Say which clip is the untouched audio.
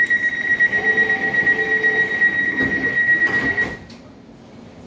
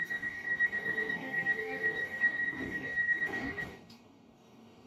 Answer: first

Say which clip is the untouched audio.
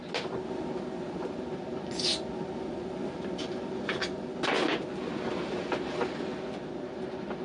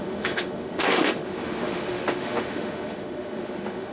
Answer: first